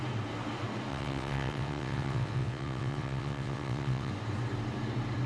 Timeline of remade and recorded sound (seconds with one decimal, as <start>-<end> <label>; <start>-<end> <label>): 0.0-0.9 recorded; 0.9-4.1 remade; 4.1-5.3 recorded